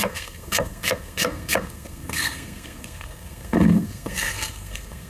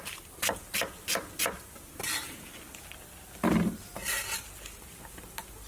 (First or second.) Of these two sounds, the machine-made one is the first